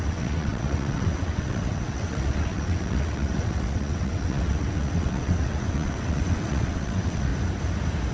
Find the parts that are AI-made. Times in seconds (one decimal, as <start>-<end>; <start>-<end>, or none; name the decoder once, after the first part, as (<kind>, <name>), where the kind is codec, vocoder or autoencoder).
0.0-7.3 (vocoder, WaveNeXt)